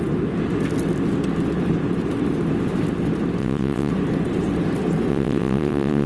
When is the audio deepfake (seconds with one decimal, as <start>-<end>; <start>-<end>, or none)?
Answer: 3.4-3.9; 5.1-6.1